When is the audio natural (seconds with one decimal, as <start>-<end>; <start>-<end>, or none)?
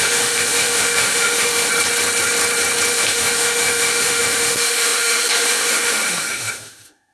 1.7-2.9